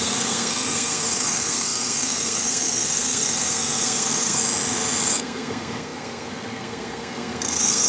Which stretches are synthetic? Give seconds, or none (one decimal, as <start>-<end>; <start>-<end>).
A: 0.0-4.4; 5.0-7.9